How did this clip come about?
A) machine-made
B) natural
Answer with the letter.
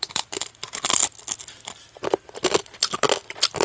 B